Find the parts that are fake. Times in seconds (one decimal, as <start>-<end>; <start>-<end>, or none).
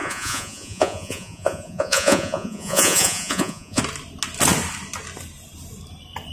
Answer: 0.0-3.8